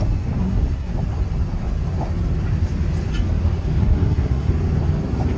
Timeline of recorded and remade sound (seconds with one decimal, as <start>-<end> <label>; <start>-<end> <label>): 0.0-0.4 recorded; 0.4-0.9 remade; 0.9-3.8 recorded; 3.8-4.5 remade; 4.5-5.4 recorded